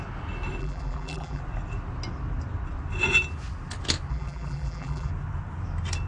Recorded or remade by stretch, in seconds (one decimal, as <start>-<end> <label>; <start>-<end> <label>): 0.0-0.6 recorded; 0.6-1.4 remade; 1.4-4.1 recorded; 4.1-5.1 remade; 5.1-6.1 recorded